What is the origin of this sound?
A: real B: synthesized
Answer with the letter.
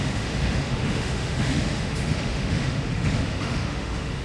B